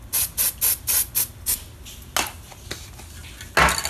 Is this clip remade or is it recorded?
recorded